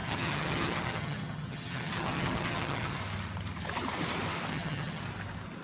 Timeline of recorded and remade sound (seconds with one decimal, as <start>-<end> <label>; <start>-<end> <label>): 0.0-3.0 remade; 3.0-4.5 recorded; 4.5-5.0 remade; 5.0-5.6 recorded